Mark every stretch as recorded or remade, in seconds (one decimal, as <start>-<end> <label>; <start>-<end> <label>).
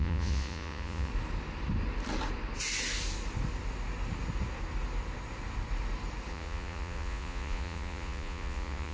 0.0-1.1 remade; 1.1-6.3 recorded; 6.3-8.9 remade